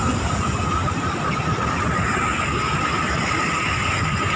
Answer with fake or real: real